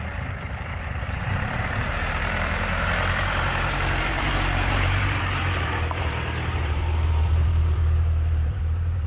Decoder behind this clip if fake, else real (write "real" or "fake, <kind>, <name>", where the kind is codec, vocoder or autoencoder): fake, vocoder, BigVGAN v2